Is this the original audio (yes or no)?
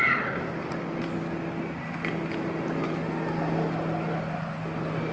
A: yes